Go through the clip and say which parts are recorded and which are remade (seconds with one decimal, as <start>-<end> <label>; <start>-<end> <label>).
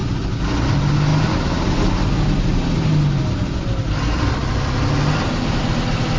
0.0-6.2 recorded